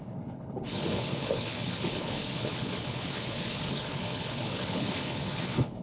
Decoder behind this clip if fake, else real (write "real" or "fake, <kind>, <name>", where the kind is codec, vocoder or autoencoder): fake, codec, HILCodec